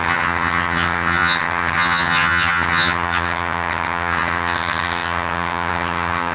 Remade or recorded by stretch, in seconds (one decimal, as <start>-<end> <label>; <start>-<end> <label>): 0.0-6.3 remade